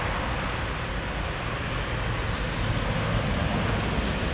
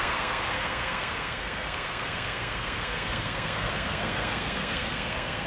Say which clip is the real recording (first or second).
first